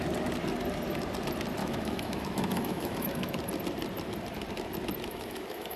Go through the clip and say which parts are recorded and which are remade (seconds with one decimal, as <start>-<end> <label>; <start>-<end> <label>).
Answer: 0.0-1.6 recorded; 1.6-3.3 remade; 3.3-5.1 recorded; 5.1-5.8 remade

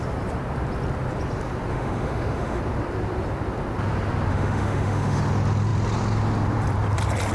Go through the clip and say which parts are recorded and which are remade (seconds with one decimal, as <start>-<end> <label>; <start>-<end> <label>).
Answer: 0.0-1.7 recorded; 1.7-2.6 remade; 2.6-4.3 recorded; 4.3-5.2 remade; 5.2-7.3 recorded

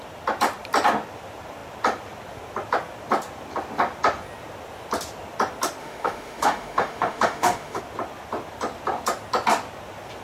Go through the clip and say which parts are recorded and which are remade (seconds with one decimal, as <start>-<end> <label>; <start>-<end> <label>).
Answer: 0.0-5.8 recorded; 5.8-7.8 remade; 7.8-10.2 recorded

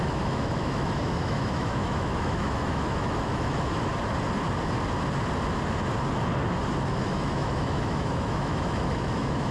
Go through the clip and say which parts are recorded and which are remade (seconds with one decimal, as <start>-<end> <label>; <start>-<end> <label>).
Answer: 0.0-3.9 remade; 3.9-7.0 recorded; 7.0-9.5 remade

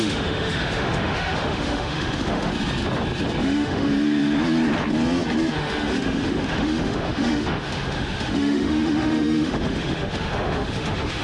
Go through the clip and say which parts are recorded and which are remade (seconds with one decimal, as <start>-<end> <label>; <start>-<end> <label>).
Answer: 0.0-2.5 remade; 2.5-3.4 recorded; 3.4-3.9 remade; 3.9-5.6 recorded; 5.6-11.2 remade